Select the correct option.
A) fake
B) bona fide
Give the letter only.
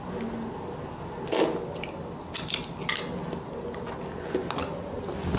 B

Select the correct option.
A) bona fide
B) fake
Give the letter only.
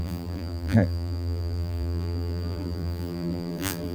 B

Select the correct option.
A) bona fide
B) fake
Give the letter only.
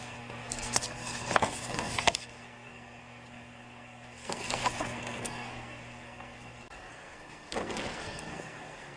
B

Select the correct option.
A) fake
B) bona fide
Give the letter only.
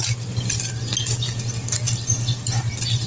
B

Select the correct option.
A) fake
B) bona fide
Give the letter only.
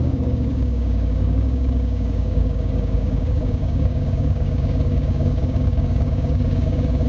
A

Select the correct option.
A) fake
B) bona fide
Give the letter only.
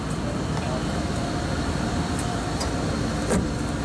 B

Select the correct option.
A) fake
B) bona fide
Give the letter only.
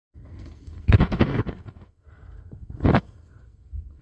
A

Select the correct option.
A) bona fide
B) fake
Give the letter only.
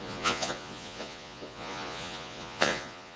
B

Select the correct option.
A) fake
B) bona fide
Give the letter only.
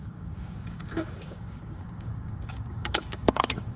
A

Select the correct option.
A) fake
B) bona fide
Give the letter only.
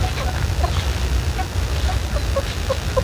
B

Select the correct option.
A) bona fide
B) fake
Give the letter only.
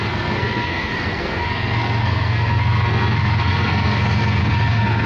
B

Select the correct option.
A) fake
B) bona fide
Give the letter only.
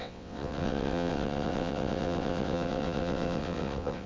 A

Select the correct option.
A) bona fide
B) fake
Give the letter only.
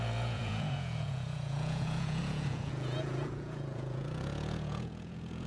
B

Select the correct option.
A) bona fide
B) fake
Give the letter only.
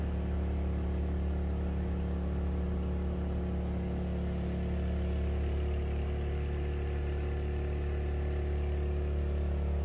A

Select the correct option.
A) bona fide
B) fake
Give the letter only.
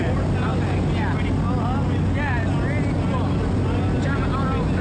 A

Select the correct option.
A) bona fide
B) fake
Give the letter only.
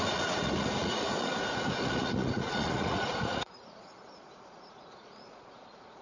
B